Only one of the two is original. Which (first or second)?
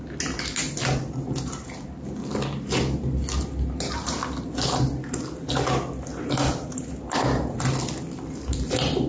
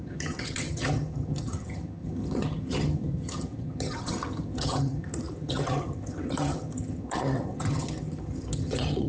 first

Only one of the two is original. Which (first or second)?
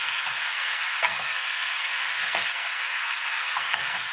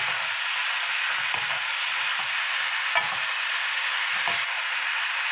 second